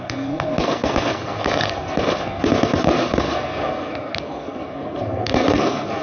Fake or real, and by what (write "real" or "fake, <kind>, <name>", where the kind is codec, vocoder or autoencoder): fake, codec, SNAC